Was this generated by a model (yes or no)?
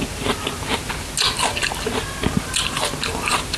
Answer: no